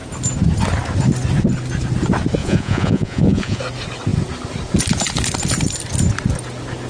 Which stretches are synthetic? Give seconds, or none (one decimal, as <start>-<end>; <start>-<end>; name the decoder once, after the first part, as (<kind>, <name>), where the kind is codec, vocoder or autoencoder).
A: 2.4-3.6 (vocoder, Vocos)